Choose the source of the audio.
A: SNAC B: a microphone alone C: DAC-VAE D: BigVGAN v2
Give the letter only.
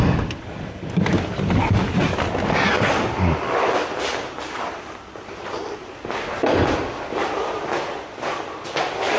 B